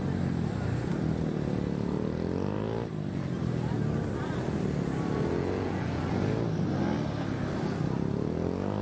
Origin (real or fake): real